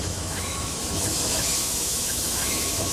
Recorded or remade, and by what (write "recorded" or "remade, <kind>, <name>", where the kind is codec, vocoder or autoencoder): remade, autoencoder, DAC-VAE